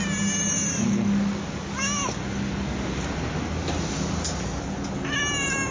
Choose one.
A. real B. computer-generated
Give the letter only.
A